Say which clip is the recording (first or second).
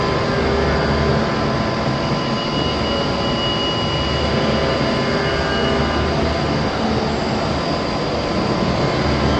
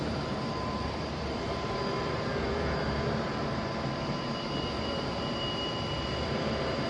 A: first